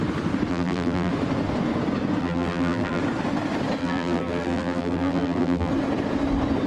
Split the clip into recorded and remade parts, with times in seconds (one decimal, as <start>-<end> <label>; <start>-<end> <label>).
0.0-0.5 recorded; 0.5-1.1 remade; 1.1-2.2 recorded; 2.2-3.0 remade; 3.0-3.8 recorded; 3.8-5.7 remade; 5.7-6.7 recorded